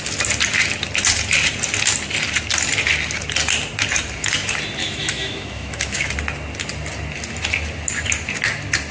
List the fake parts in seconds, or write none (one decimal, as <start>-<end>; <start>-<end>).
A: 4.8-6.1